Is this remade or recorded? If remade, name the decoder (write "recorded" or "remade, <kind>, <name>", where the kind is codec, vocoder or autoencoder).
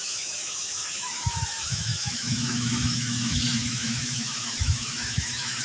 remade, autoencoder, DAC-VAE